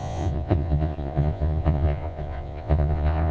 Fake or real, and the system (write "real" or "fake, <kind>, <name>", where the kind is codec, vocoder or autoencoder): fake, vocoder, Vocos